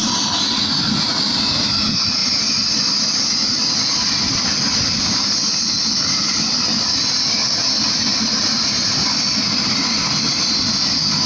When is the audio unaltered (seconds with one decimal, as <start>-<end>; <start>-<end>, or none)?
0.0-11.3